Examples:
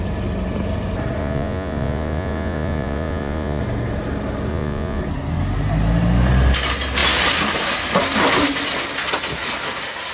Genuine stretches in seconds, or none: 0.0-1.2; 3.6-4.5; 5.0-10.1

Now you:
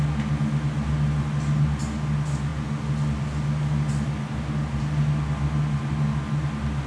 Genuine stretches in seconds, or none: 0.0-6.9

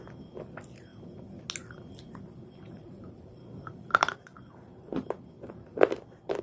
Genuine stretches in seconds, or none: 0.9-2.2; 4.9-5.5

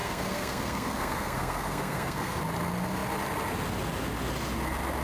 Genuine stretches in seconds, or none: 2.4-5.0

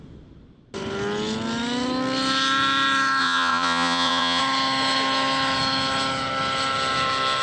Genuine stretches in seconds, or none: 0.0-3.2; 4.4-7.4

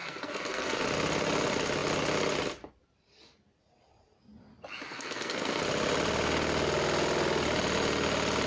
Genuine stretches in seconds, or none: 0.8-4.9; 5.6-8.5